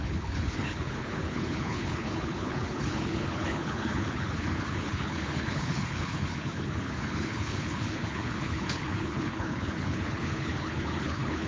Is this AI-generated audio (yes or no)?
yes